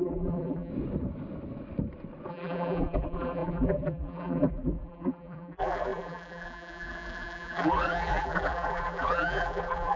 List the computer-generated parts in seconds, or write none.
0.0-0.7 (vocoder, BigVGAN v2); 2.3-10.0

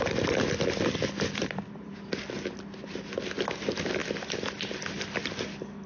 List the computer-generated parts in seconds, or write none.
1.4-1.9 (vocoder, BigVGAN v2)

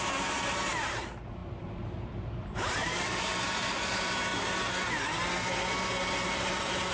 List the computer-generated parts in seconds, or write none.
0.0-4.3 (vocoder, BigVGAN v2); 6.1-6.9

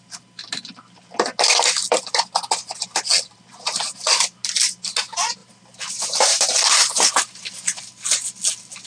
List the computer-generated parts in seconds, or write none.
1.8-2.3 (vocoder, BigVGAN v2); 3.1-4.2; 5.4-7.5